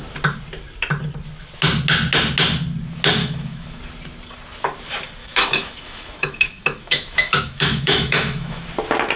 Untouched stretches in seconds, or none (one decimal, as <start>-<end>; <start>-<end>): 0.0-3.2; 3.8-5.2; 8.6-9.2